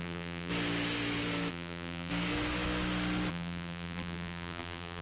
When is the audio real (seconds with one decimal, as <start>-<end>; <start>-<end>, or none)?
0.5-1.5; 2.1-3.3